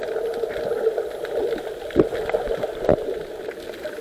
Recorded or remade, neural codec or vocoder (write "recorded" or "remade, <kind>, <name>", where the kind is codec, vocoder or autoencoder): recorded